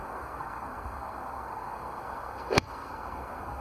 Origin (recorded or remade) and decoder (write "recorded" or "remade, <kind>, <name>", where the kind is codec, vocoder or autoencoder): remade, codec, SNAC